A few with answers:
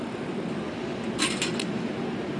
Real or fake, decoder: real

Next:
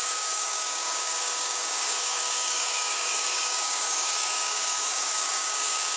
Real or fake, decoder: fake, codec, DAC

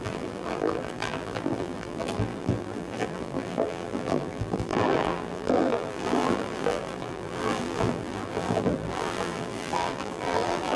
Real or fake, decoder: fake, vocoder, BigVGAN v2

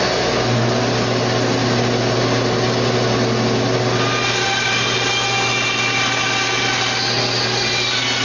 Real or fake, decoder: real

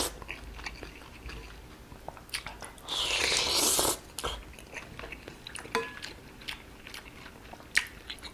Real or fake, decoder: real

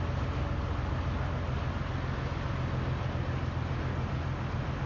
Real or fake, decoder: real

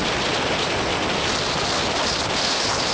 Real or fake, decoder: real